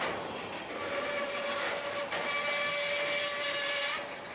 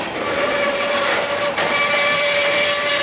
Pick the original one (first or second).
first